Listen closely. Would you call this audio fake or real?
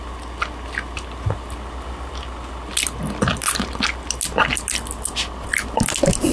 real